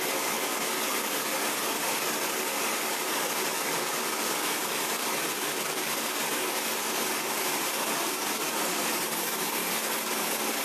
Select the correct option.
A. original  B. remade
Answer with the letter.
B